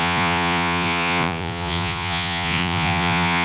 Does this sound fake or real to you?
fake